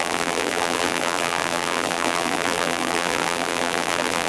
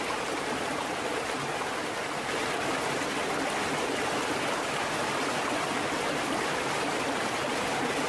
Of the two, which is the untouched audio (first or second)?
second